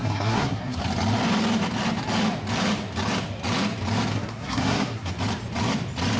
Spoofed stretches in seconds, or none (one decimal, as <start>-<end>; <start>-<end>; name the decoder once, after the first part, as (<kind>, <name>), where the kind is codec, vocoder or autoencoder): 0.0-0.8 (codec, SNAC); 4.1-5.1